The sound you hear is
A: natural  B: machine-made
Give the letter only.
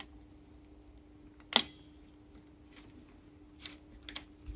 A